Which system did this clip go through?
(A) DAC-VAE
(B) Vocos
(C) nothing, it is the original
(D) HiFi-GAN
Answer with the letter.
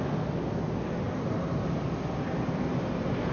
C